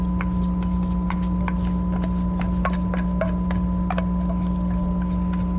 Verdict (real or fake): real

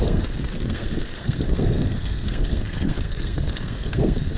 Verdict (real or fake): fake